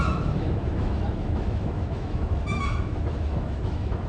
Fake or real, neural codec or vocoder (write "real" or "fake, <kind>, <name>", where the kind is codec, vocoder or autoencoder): fake, autoencoder, DAC-VAE